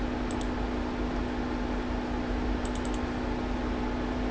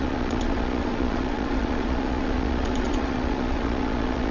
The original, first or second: first